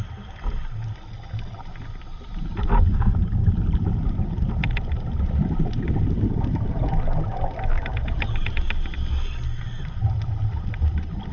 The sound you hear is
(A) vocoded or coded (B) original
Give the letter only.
B